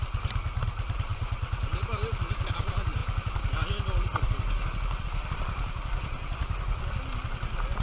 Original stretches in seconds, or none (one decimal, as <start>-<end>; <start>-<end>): 0.0-7.8